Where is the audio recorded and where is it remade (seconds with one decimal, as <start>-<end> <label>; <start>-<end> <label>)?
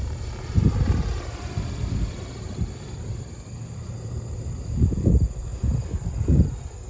0.0-6.9 recorded